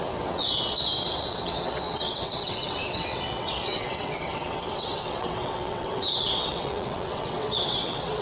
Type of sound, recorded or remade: remade